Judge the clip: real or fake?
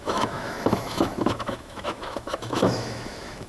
fake